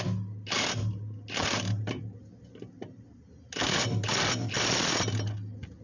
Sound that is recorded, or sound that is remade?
recorded